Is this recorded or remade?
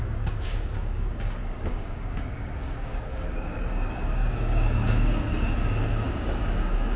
remade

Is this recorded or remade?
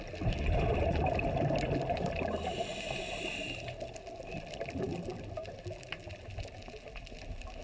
recorded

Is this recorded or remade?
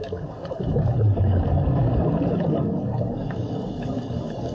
remade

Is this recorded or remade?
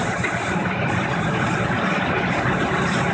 recorded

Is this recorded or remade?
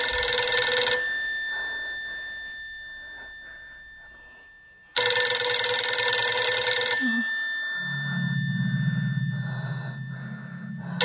recorded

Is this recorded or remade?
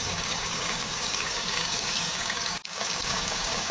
remade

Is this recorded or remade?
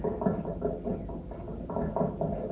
recorded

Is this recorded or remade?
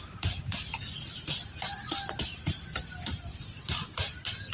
recorded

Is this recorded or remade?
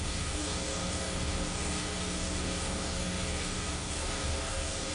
remade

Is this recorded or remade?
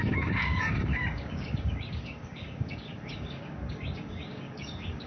remade